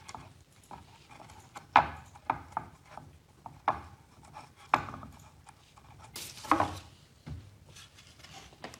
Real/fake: real